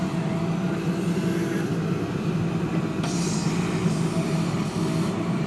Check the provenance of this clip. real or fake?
real